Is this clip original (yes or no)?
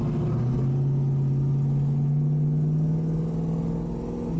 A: yes